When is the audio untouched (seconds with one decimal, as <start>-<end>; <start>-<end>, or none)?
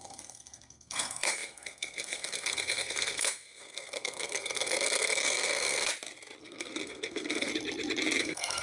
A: 5.9-6.4; 7.5-8.2